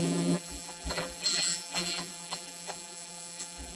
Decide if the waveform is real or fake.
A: fake